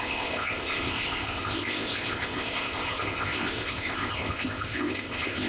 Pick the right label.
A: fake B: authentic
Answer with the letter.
A